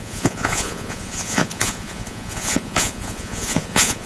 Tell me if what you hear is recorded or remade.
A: remade